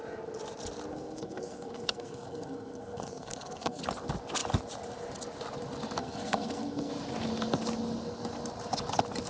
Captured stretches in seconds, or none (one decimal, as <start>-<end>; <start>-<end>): 0.0-0.9; 3.8-6.0; 6.9-9.3